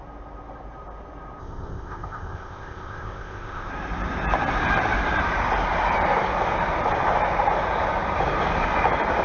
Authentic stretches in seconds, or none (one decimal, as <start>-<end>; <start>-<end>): 0.0-1.4; 3.7-9.2